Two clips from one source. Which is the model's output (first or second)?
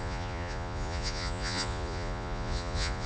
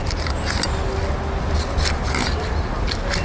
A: first